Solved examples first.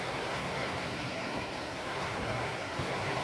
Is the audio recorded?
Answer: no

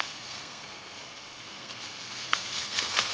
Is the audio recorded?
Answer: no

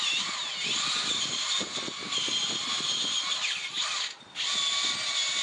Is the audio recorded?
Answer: yes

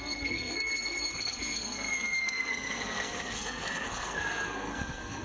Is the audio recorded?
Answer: no